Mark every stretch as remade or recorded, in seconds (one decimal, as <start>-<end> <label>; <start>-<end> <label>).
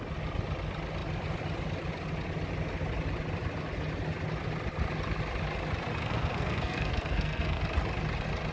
0.0-6.0 recorded; 6.0-7.6 remade; 7.6-8.5 recorded